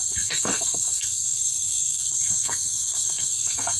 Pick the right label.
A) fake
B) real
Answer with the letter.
A